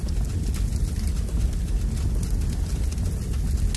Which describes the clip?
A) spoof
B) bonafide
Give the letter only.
B